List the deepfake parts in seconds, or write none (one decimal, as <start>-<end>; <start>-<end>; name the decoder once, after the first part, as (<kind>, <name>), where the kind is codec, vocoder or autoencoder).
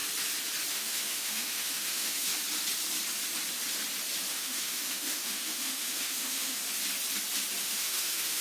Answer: 0.7-2.3 (autoencoder, DAC-VAE); 4.3-6.6; 7.6-8.4